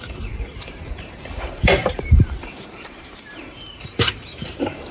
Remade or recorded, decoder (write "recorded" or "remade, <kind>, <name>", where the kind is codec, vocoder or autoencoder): remade, vocoder, BigVGAN v2